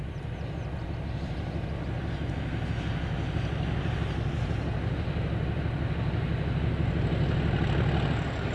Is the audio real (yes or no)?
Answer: yes